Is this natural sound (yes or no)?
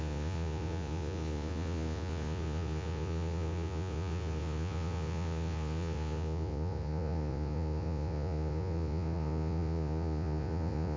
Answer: no